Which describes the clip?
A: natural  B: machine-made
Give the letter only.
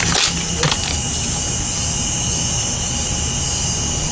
A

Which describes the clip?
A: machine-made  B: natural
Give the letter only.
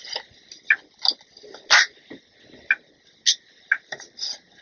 B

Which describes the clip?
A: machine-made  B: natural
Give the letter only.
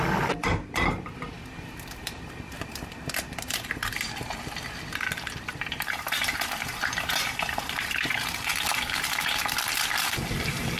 A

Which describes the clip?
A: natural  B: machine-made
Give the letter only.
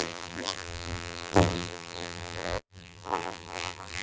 B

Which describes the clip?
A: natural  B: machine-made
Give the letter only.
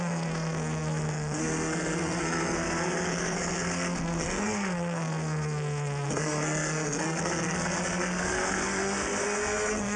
B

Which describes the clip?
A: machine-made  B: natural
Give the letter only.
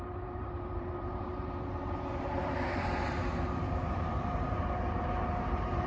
A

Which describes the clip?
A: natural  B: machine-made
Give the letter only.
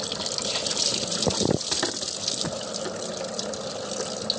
A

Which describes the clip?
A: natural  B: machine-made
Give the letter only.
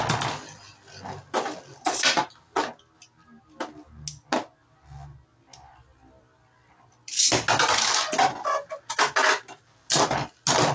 A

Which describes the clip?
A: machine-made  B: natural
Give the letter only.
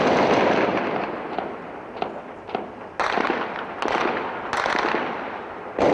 B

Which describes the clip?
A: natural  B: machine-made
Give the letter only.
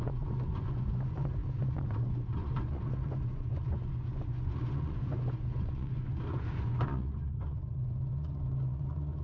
B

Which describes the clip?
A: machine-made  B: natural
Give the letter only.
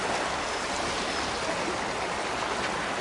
B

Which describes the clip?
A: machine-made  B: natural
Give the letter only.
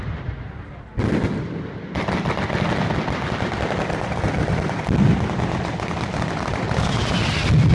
B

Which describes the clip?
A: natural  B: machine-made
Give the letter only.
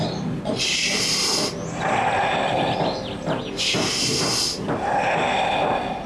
A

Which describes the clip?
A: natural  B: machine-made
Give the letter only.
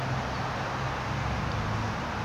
A